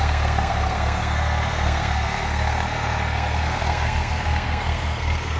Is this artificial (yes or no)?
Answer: yes